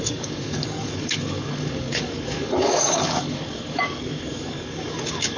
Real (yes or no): no